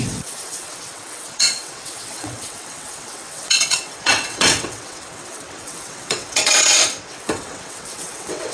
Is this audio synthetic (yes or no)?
yes